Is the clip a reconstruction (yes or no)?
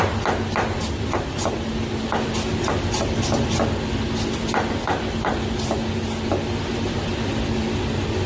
no